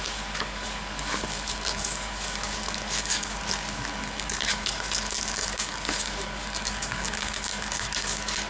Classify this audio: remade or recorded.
remade